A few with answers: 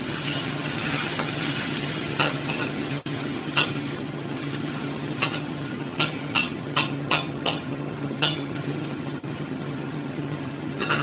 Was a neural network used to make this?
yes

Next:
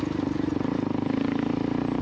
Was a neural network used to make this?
no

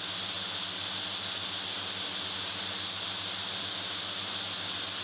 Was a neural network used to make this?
no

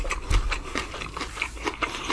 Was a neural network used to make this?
yes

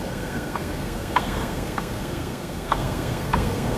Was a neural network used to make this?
yes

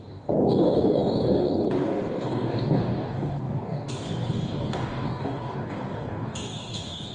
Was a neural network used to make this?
yes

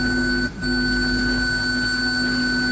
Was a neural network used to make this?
no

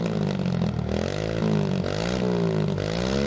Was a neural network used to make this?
no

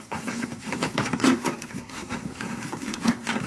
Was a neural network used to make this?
yes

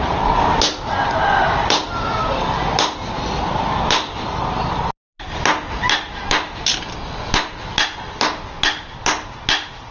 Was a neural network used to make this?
no